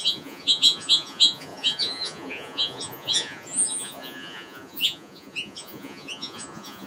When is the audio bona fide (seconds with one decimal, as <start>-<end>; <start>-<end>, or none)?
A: none